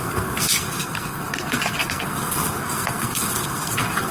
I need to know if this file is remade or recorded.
remade